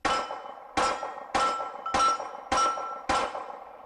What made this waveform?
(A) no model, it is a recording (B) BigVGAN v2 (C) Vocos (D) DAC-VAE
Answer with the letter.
A